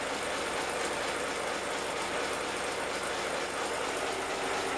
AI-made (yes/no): no